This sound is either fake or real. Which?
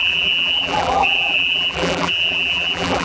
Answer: fake